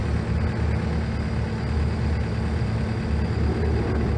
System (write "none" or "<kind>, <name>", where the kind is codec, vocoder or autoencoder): none